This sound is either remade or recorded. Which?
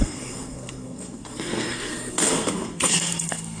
remade